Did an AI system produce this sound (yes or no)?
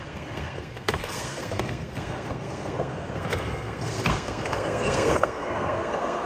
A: yes